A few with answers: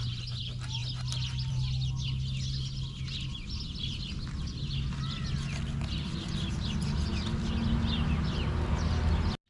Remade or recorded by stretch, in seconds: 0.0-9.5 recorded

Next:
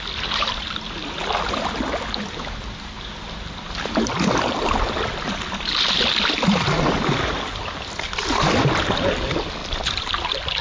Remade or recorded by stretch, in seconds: 0.0-10.6 recorded

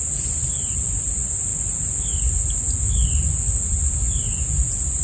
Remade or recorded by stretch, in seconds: 0.0-5.0 recorded

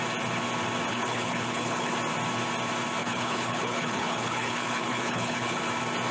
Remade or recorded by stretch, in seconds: 0.0-0.9 recorded; 0.9-1.9 remade; 1.9-3.0 recorded; 3.0-5.6 remade; 5.6-6.1 recorded

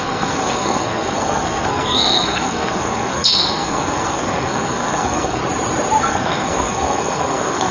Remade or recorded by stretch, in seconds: 0.0-5.4 remade; 5.4-6.0 recorded; 6.0-7.7 remade

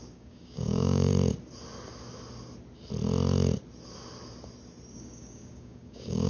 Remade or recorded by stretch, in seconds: 0.0-1.1 remade; 1.1-4.9 recorded; 4.9-6.3 remade